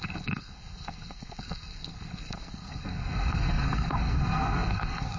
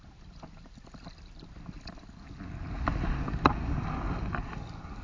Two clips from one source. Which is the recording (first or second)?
second